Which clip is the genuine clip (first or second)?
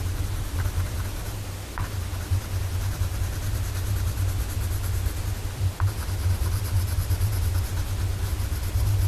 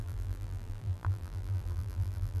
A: first